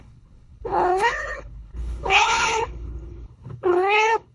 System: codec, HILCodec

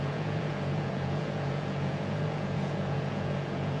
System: vocoder, Vocos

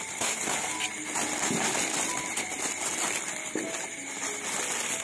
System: none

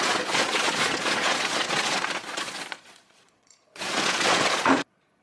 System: vocoder, Vocos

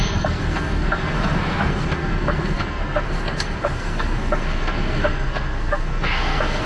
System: codec, SNAC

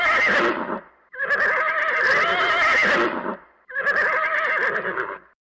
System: none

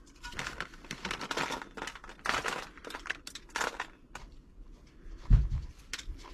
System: none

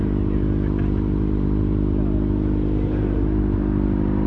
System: vocoder, BigVGAN v2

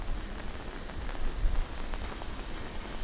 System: none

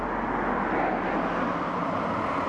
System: none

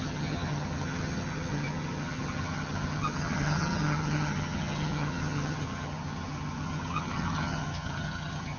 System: vocoder, HiFi-GAN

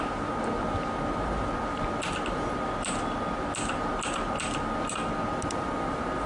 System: none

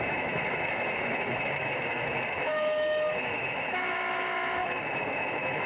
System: autoencoder, DAC-VAE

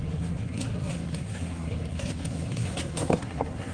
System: codec, SNAC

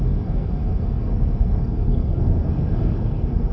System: codec, SNAC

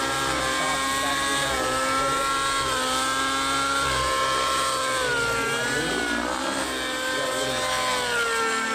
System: none